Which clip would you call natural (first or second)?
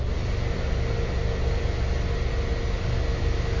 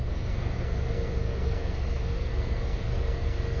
first